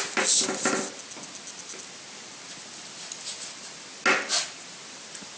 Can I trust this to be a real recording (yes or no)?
yes